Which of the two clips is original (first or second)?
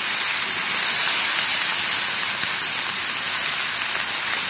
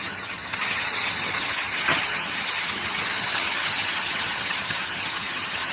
first